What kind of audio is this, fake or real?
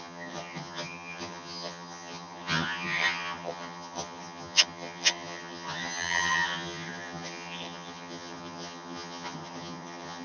fake